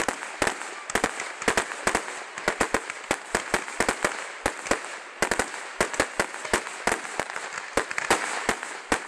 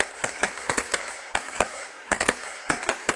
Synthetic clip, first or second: second